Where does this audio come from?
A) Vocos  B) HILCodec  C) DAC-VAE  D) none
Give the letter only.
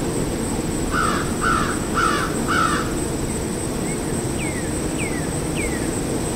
D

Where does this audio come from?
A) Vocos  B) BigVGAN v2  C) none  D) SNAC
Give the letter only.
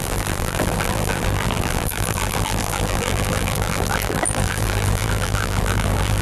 B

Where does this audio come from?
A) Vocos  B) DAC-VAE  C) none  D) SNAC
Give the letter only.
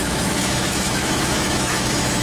B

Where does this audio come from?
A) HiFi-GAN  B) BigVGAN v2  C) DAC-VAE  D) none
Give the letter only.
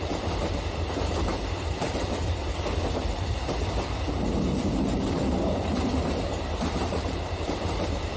B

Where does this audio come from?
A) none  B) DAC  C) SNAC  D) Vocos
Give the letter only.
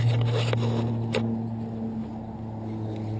A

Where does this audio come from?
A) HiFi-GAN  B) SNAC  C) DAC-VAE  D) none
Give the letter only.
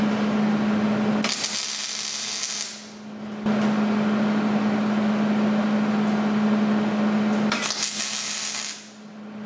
D